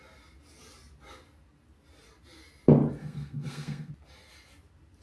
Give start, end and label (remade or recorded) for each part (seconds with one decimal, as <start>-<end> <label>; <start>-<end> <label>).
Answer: 0.0-3.0 recorded; 3.0-3.9 remade; 3.9-5.0 recorded